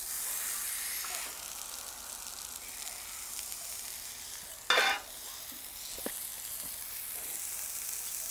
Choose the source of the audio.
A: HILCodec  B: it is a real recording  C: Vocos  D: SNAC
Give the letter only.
B